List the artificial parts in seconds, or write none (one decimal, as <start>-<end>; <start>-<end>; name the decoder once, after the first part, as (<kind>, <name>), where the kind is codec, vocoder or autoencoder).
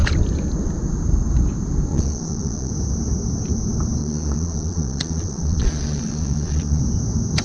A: 1.9-2.7 (vocoder, Vocos); 4.0-6.8